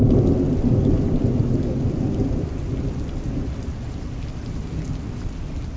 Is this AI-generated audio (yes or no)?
no